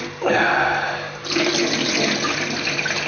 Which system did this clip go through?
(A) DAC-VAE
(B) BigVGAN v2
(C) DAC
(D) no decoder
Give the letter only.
D